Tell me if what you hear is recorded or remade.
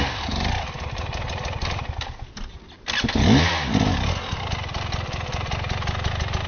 recorded